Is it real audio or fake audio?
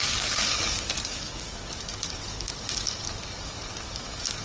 fake